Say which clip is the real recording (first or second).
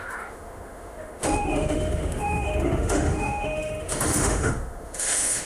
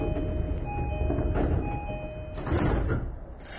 second